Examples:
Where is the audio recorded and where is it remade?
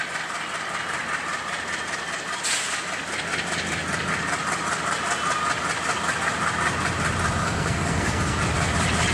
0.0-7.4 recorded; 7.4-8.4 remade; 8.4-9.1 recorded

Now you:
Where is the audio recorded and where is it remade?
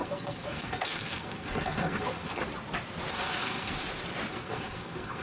0.0-2.4 remade; 2.4-3.1 recorded; 3.1-3.8 remade; 3.8-4.3 recorded; 4.3-5.2 remade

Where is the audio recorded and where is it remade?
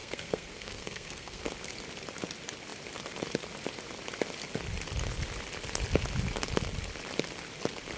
0.0-1.4 remade; 1.4-8.0 recorded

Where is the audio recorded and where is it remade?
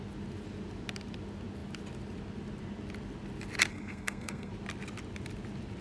0.0-3.7 recorded; 3.7-4.5 remade; 4.5-5.8 recorded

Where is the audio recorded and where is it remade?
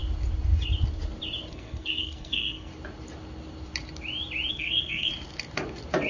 0.0-1.5 recorded; 1.5-2.7 remade; 2.7-4.5 recorded; 4.5-5.1 remade; 5.1-6.1 recorded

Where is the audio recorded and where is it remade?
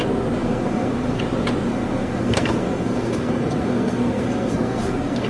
0.0-0.4 recorded; 0.4-1.2 remade; 1.2-1.7 recorded; 1.7-5.3 remade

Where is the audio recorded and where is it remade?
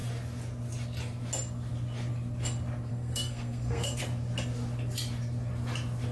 0.0-2.9 recorded; 2.9-4.0 remade; 4.0-6.1 recorded